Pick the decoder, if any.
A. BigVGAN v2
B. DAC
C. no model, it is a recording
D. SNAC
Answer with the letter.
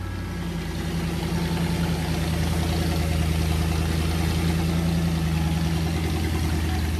C